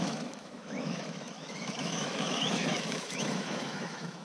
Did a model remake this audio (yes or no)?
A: yes